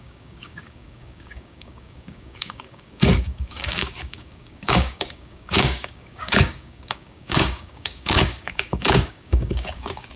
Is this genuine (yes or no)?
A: no